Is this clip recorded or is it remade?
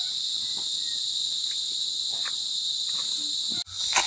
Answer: recorded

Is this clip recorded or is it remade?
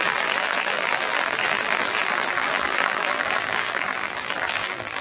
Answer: remade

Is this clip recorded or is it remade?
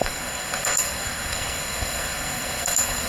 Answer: remade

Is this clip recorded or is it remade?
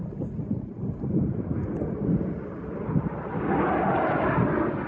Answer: recorded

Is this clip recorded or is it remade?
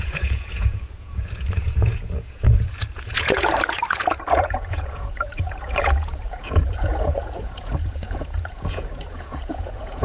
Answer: remade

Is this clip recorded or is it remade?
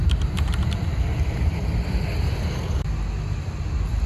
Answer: recorded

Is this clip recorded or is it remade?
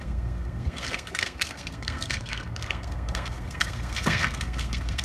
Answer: remade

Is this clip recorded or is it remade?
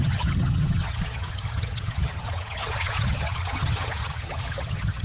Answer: remade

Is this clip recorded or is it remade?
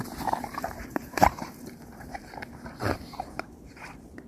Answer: remade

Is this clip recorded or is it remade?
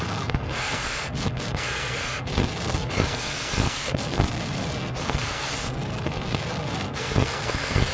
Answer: remade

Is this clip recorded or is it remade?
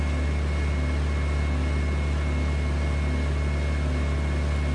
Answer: recorded